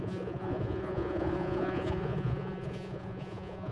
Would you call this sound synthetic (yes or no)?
yes